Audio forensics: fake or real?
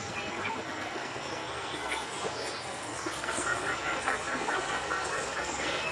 fake